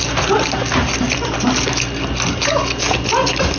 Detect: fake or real real